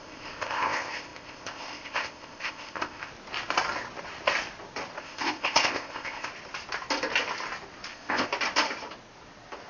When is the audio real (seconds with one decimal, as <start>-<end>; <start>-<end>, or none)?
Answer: 3.1-5.0; 6.3-7.9; 8.3-9.7